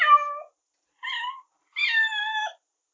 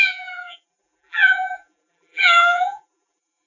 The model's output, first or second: second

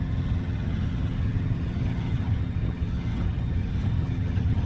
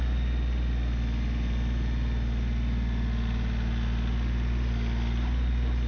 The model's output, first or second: first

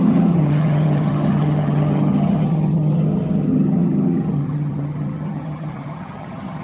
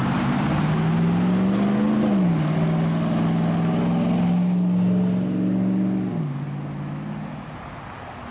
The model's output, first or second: first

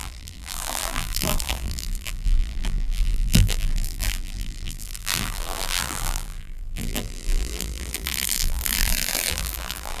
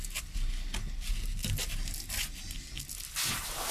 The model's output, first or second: first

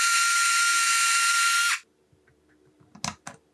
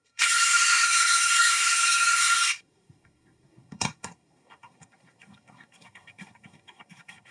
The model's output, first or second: second